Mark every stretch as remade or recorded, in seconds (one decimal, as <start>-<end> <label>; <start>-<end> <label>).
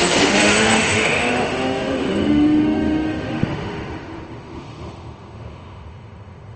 0.0-6.6 remade